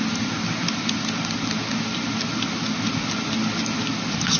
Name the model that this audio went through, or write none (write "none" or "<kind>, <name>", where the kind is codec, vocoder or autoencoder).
none